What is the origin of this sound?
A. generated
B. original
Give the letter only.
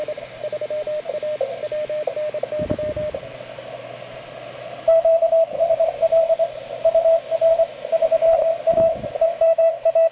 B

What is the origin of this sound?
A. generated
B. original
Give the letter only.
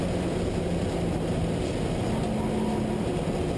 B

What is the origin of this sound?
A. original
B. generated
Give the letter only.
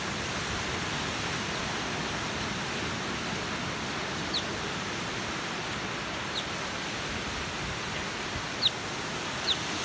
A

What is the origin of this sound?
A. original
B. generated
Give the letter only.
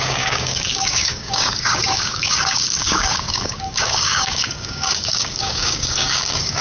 B